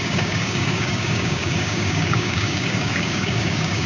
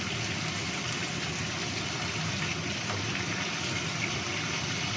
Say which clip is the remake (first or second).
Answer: first